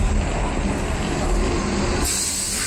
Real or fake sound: real